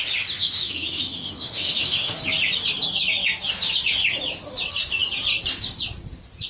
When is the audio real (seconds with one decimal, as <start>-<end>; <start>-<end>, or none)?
0.0-0.4; 2.2-6.5